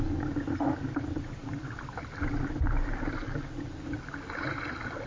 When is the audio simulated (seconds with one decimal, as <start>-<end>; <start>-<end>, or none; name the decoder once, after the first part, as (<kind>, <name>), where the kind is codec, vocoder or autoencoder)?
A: none